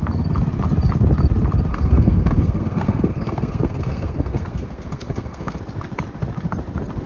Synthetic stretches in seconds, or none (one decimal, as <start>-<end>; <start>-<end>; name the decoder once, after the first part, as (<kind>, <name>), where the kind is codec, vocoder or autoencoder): 1.7-5.6 (codec, SNAC)